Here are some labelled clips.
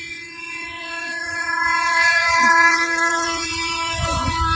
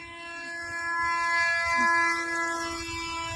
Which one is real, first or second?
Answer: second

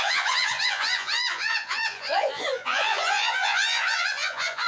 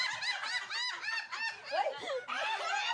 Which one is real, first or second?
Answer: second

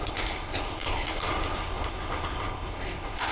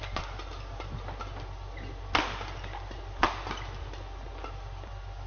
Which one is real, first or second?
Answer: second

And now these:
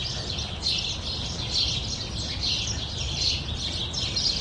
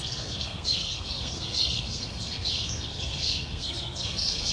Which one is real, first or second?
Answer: first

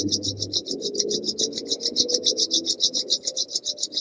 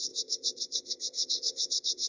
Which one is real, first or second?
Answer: first